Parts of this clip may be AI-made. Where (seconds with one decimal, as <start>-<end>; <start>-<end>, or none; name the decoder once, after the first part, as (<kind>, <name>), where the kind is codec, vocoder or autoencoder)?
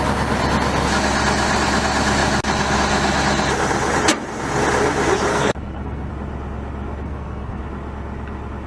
5.3-6.1 (codec, SNAC); 7.0-7.6